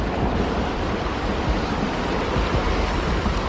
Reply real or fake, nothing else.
real